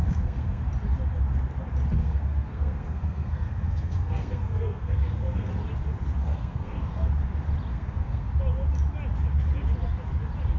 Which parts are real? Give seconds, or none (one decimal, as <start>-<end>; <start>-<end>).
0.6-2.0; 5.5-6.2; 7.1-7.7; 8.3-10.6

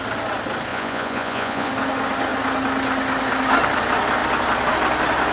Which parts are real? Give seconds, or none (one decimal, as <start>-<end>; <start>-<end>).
0.0-0.7; 1.7-5.3

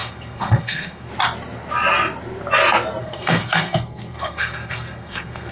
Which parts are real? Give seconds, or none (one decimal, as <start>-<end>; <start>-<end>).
1.1-3.0